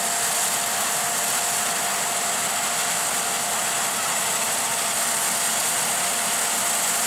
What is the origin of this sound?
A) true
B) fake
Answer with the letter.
A